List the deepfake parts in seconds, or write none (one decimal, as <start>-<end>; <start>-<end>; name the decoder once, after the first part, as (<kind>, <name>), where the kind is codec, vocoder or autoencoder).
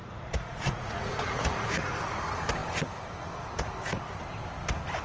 0.0-2.0 (vocoder, Vocos)